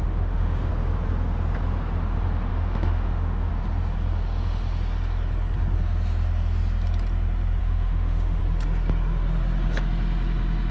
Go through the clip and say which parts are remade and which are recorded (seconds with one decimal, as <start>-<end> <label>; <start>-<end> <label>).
0.0-0.7 remade; 0.7-2.5 recorded; 2.5-3.5 remade; 3.5-7.6 recorded; 7.6-8.4 remade; 8.4-10.7 recorded